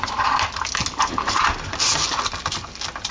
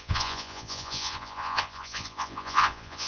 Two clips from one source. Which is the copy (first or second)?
second